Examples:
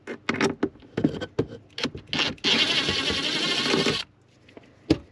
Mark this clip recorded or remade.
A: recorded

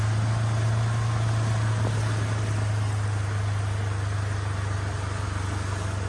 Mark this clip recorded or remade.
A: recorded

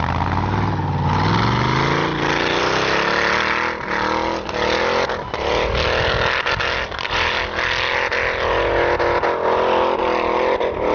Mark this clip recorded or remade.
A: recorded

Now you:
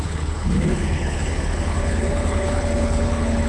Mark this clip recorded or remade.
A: remade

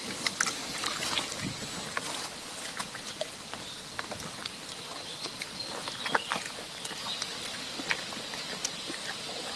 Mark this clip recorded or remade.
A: recorded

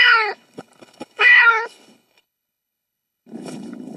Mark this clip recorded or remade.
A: remade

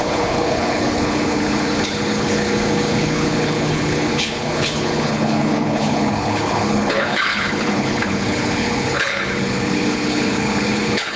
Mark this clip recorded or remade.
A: remade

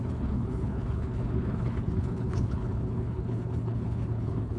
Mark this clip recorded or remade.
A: remade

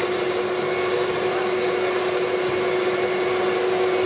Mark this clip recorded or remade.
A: recorded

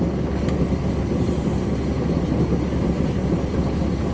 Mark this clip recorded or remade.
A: recorded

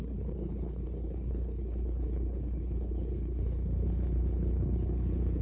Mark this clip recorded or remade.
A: remade